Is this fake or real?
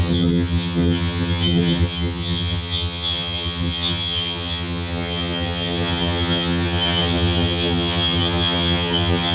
fake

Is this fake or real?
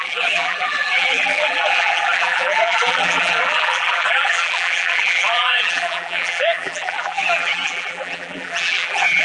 fake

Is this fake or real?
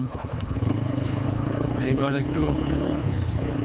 fake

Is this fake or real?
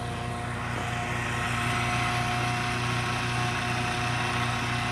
real